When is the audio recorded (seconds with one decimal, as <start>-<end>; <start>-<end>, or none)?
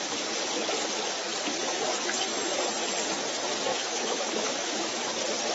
0.0-3.7; 5.1-5.5